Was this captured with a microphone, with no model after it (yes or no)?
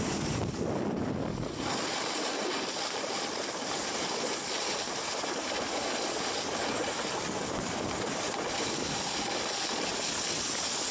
yes